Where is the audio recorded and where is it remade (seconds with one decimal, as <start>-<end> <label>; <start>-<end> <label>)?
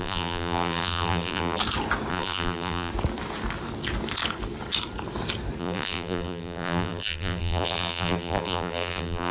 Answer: 0.0-1.6 remade; 1.6-2.1 recorded; 2.1-2.9 remade; 2.9-5.6 recorded; 5.6-9.3 remade